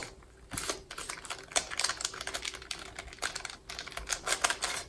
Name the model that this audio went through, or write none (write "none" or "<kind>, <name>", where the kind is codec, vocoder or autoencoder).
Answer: none